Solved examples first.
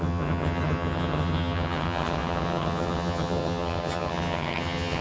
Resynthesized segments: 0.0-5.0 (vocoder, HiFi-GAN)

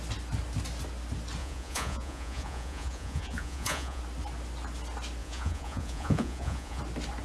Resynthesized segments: 1.4-4.0 (vocoder, Vocos); 5.2-6.8